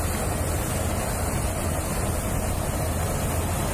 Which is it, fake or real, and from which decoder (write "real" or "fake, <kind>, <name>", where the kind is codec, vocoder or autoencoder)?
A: real